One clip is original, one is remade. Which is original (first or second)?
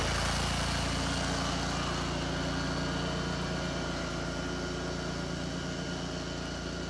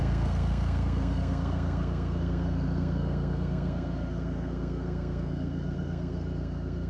first